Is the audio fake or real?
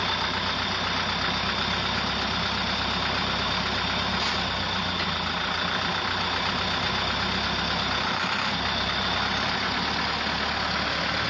real